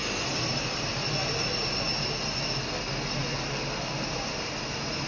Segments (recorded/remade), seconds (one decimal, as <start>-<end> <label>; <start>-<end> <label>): 0.0-5.1 recorded